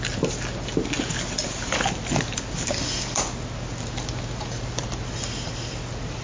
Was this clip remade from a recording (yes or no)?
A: no